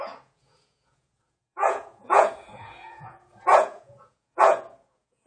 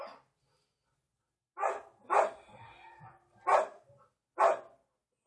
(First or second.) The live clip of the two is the second